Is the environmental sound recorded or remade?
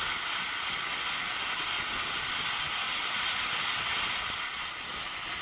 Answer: recorded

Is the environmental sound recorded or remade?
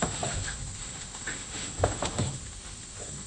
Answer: remade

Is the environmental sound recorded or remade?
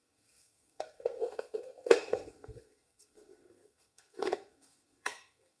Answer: remade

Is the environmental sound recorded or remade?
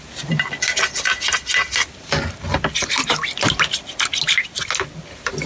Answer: recorded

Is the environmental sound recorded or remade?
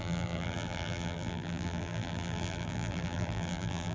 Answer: remade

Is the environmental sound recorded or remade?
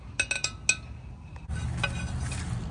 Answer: recorded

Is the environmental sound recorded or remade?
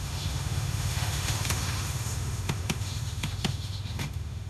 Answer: remade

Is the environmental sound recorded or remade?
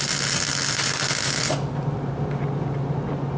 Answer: recorded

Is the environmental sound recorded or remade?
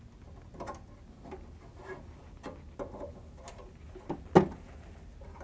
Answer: recorded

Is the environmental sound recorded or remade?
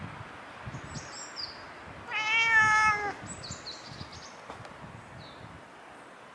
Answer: recorded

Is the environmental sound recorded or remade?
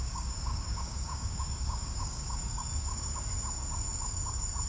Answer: remade